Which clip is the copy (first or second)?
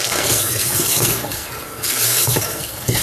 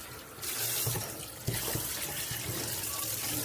first